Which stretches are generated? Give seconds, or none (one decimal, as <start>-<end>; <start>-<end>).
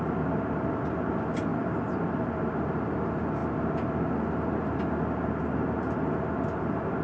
none